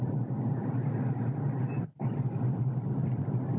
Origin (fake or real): real